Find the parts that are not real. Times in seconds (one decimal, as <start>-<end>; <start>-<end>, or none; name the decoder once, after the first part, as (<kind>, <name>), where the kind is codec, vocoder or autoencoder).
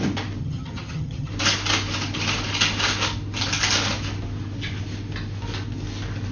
0.4-1.3 (vocoder, HiFi-GAN)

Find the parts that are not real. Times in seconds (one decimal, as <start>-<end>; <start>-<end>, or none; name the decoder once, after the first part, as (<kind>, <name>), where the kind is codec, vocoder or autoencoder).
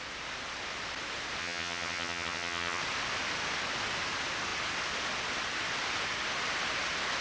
1.4-2.8 (vocoder, HiFi-GAN)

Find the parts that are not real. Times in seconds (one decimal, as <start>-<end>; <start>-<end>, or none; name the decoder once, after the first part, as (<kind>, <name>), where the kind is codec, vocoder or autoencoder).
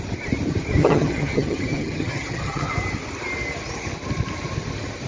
0.8-2.7 (vocoder, HiFi-GAN)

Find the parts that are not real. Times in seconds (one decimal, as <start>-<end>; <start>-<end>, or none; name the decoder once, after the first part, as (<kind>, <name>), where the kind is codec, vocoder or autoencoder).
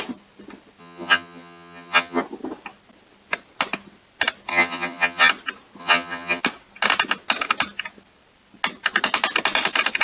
0.8-2.2 (vocoder, HiFi-GAN); 4.5-5.3; 5.8-6.4